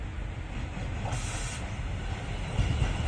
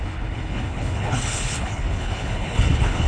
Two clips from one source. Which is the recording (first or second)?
first